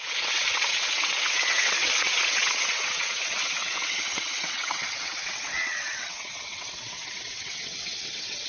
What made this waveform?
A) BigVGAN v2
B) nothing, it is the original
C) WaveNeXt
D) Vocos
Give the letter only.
C